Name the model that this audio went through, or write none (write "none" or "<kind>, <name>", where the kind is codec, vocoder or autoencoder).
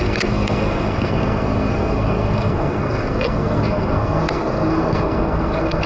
codec, SNAC